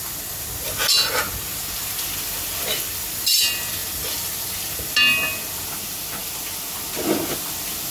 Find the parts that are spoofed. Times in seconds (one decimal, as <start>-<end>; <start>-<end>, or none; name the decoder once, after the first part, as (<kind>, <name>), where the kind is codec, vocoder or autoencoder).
3.8-4.5 (vocoder, BigVGAN v2)